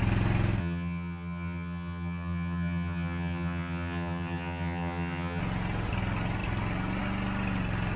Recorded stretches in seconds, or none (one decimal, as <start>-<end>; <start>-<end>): 0.0-0.6; 5.4-8.0